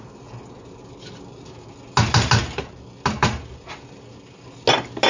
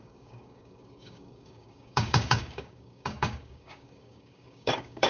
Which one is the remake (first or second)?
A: second